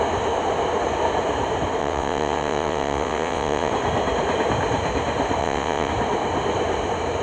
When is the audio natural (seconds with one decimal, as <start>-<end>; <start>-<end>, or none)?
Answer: 0.0-1.8; 3.7-5.4; 5.9-7.2